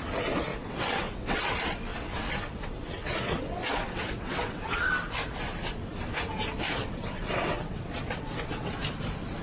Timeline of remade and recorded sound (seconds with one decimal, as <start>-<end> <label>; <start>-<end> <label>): 0.0-0.5 recorded; 0.5-1.5 remade; 1.5-1.9 recorded; 1.9-4.9 remade; 4.9-6.8 recorded; 6.8-8.7 remade; 8.7-9.4 recorded